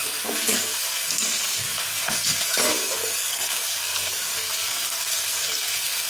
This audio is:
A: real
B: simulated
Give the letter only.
B